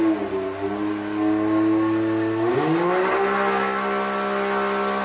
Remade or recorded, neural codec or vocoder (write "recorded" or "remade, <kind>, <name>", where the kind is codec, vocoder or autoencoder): recorded